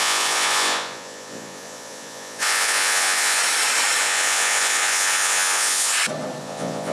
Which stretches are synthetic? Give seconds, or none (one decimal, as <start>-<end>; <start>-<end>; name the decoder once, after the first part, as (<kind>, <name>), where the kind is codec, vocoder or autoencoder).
0.0-3.4 (vocoder, Vocos); 4.0-5.9; 6.4-6.9